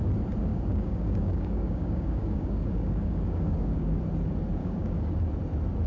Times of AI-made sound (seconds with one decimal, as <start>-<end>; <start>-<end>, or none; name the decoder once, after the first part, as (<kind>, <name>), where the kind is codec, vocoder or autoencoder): 0.5-4.0 (codec, DAC); 4.6-5.1